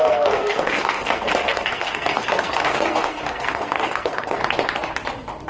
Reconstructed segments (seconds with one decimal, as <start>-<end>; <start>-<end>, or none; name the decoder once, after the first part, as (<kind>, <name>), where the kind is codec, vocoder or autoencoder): 0.0-4.4 (codec, SNAC)